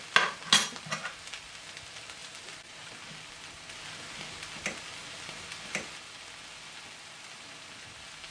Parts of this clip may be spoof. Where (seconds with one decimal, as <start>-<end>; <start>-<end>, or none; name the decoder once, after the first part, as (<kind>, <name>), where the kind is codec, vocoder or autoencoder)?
2.2-2.9 (vocoder, BigVGAN v2)